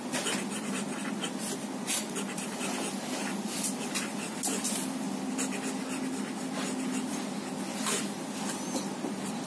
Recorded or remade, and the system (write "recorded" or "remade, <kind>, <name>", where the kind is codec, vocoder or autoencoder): recorded